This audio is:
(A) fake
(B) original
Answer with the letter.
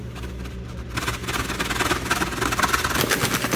B